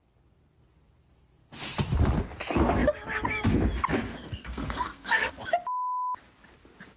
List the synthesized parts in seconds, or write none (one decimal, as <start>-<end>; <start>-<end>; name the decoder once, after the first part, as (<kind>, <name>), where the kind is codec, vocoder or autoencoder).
4.1-5.3 (codec, SNAC)